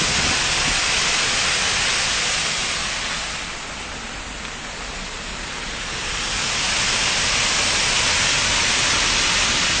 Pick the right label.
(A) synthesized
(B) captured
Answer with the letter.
B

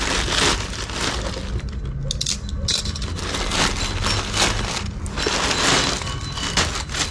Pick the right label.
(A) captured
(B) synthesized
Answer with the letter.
A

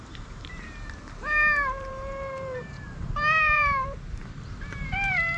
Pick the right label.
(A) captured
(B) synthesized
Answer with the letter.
B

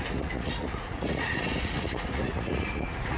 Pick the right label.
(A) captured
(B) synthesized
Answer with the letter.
B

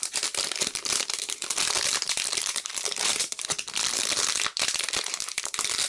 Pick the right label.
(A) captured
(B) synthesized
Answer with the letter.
B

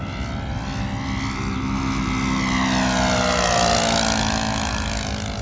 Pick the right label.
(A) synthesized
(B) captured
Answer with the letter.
B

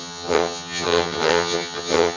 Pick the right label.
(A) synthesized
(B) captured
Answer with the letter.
A